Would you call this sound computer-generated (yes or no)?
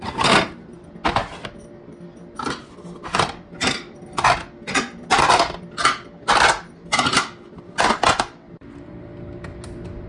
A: no